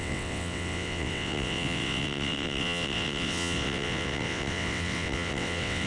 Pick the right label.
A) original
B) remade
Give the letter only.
B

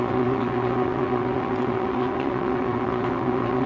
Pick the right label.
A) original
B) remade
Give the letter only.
B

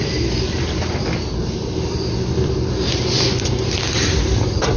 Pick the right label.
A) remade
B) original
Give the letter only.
B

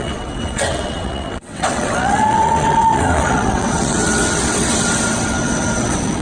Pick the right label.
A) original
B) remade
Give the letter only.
B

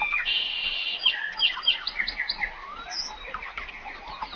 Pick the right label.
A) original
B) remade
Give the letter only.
A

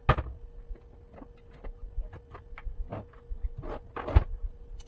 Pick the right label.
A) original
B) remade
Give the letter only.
A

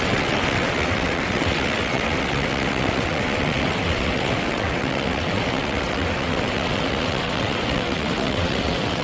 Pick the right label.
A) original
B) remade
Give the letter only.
B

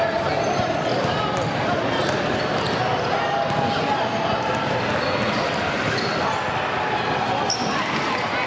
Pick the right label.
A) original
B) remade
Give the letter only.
A